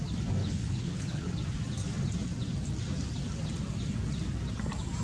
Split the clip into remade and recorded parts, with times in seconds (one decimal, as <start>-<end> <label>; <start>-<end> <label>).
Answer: 0.0-0.4 recorded; 0.4-1.3 remade; 1.3-5.0 recorded